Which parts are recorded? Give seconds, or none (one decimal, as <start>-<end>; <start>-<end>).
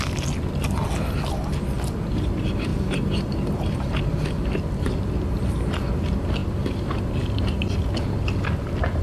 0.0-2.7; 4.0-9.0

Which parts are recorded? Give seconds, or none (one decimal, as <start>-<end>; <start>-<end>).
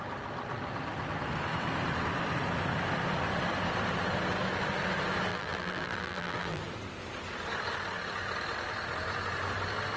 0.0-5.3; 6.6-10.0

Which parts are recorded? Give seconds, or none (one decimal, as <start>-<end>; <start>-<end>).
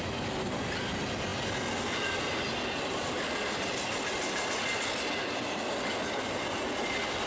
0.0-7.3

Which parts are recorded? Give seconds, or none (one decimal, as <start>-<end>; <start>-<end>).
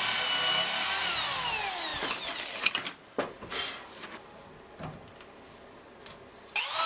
0.0-6.9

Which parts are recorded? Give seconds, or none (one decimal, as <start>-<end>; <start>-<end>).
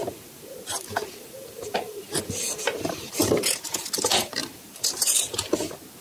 3.5-4.1; 5.4-6.0